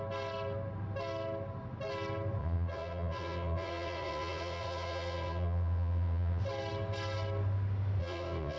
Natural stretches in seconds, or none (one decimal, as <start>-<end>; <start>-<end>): 0.0-2.4; 6.4-8.0